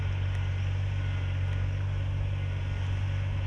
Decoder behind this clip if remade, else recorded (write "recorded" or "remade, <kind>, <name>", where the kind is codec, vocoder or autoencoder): recorded